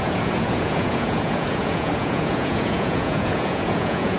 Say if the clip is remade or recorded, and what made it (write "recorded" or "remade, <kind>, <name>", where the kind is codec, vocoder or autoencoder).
remade, vocoder, Vocos